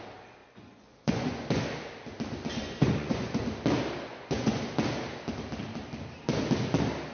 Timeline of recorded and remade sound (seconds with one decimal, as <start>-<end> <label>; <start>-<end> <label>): 0.0-0.4 recorded; 0.4-1.6 remade; 1.6-2.6 recorded; 2.6-3.4 remade; 3.4-4.1 recorded; 4.1-4.6 remade; 4.6-7.1 recorded